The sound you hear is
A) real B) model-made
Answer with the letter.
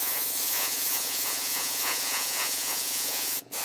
B